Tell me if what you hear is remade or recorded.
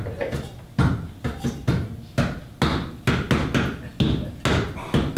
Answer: recorded